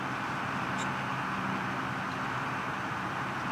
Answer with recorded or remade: recorded